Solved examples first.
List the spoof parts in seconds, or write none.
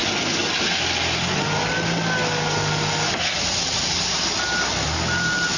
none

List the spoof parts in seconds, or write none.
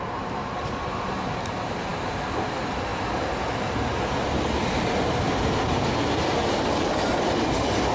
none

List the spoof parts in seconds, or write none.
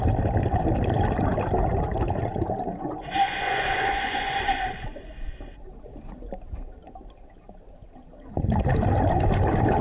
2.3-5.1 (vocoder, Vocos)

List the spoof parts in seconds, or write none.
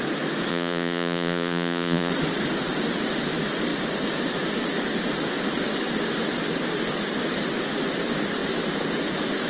0.5-2.1 (vocoder, Vocos)